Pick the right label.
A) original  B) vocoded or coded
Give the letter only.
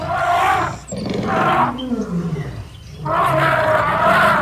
A